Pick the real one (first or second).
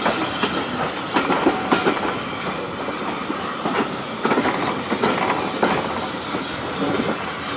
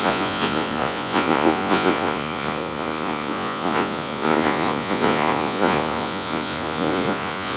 first